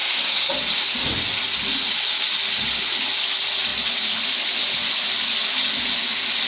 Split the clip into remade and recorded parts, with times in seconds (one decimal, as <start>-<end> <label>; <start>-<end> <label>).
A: 0.0-0.5 remade; 0.5-6.5 recorded